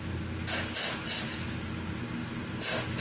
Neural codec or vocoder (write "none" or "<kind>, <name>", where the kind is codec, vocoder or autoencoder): none